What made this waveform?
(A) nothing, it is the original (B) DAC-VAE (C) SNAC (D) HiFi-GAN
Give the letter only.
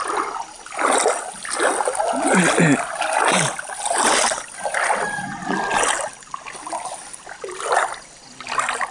A